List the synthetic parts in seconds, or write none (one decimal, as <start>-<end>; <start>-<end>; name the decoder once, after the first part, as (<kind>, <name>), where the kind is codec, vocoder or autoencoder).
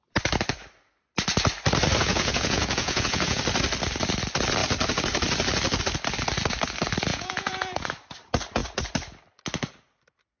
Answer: 2.0-3.4 (vocoder, Vocos); 7.1-7.9